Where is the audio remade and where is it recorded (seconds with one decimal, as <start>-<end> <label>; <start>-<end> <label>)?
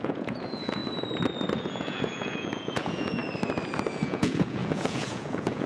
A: 0.0-0.8 remade; 0.8-1.6 recorded; 1.6-3.2 remade; 3.2-3.9 recorded; 3.9-5.7 remade